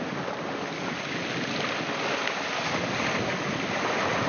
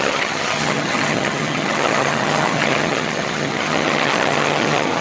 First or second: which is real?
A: first